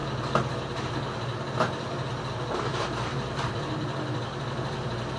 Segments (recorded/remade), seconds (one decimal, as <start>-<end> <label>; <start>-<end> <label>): 0.0-5.2 remade

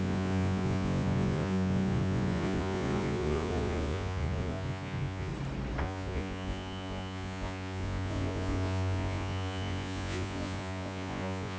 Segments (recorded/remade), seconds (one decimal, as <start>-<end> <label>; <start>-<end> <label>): 0.0-5.3 remade; 5.3-5.8 recorded; 5.8-11.6 remade

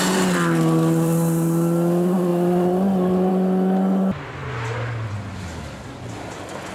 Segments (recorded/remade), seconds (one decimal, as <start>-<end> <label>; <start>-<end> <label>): 0.0-6.7 recorded

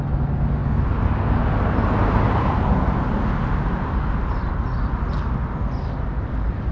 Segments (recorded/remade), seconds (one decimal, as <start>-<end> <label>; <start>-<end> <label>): 0.0-6.7 recorded

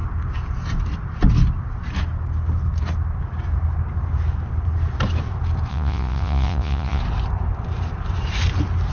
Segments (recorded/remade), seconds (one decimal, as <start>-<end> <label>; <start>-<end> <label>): 0.0-5.7 recorded; 5.7-7.0 remade; 7.0-8.9 recorded

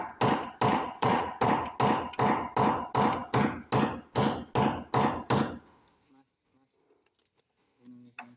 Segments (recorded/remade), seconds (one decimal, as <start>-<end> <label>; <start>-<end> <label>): 0.0-0.7 recorded; 0.7-1.5 remade; 1.5-8.4 recorded

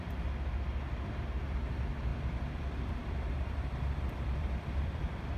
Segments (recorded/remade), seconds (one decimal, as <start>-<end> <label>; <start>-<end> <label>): 0.0-2.1 recorded; 2.1-5.4 remade